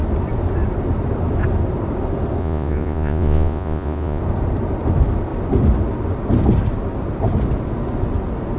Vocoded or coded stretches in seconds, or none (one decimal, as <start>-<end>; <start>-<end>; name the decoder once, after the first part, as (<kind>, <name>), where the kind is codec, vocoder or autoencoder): 2.4-4.2 (vocoder, Vocos)